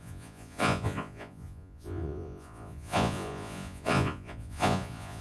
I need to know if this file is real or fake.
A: fake